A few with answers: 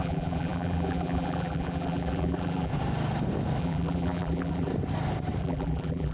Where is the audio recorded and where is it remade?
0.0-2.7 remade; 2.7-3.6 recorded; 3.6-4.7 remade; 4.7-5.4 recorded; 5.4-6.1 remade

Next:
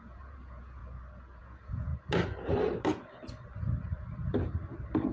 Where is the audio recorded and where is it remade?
0.0-0.8 remade; 0.8-1.4 recorded; 1.4-1.9 remade; 1.9-5.1 recorded

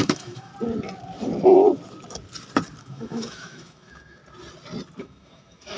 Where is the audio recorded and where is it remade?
0.0-0.5 remade; 0.5-2.8 recorded; 2.8-4.2 remade; 4.2-5.0 recorded; 5.0-5.8 remade

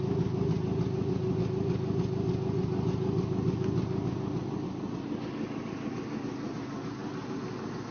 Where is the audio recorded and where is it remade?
0.0-7.9 recorded

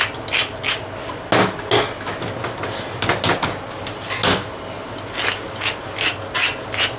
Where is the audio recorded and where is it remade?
0.0-7.0 recorded

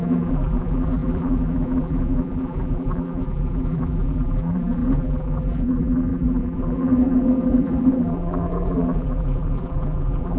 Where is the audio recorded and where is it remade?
0.0-10.4 remade

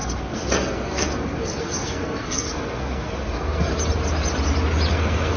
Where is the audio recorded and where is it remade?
0.0-3.7 remade; 3.7-4.9 recorded; 4.9-5.4 remade

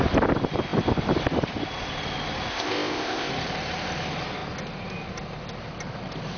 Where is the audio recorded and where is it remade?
0.0-2.5 recorded; 2.5-3.3 remade; 3.3-6.4 recorded